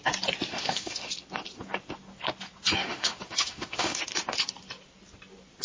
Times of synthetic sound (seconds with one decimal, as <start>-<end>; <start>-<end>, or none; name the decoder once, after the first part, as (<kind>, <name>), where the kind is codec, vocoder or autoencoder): 0.5-1.1 (autoencoder, DAC-VAE); 2.8-4.0